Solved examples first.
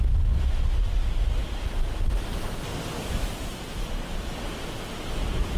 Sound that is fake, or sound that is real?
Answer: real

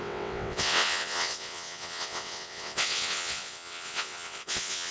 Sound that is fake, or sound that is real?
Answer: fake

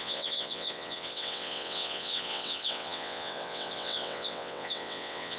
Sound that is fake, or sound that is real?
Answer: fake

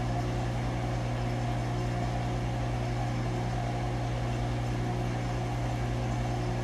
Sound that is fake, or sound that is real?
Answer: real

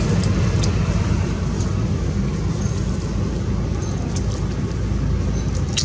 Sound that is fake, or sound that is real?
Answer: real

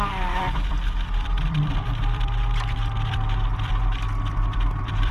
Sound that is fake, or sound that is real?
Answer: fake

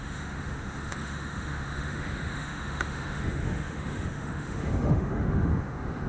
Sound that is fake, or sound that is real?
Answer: fake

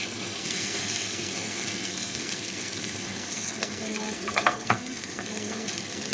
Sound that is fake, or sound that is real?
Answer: fake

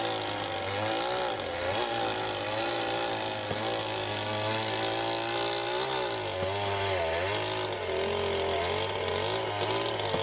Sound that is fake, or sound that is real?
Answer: real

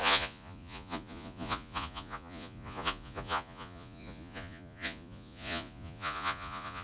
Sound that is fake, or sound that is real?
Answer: fake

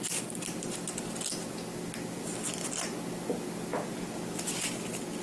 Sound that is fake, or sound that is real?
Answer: real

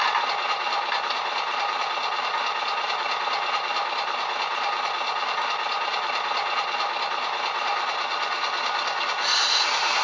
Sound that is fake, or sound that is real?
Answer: real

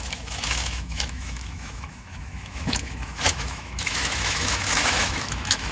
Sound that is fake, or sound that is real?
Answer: fake